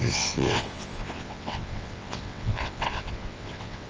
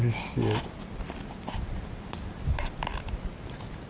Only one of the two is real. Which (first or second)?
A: second